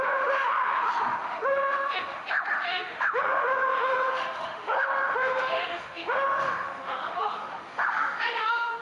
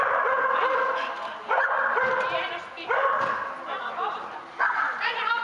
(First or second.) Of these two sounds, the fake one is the first